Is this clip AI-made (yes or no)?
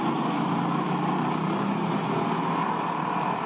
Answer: no